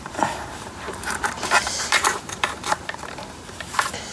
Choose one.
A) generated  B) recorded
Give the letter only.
A